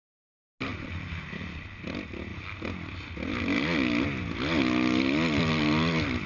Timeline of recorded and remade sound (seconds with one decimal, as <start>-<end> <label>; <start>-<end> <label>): 0.0-6.3 recorded